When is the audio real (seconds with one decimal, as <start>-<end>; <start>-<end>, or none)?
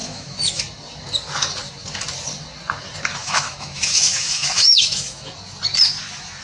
0.6-3.2; 5.3-6.4